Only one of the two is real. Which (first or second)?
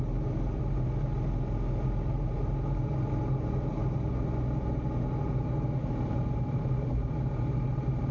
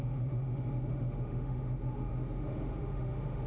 first